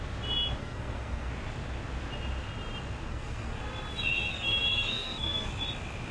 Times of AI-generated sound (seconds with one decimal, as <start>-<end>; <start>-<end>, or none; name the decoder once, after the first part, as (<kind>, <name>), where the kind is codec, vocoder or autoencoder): 0.6-1.3 (codec, SNAC); 3.1-3.6; 4.3-5.5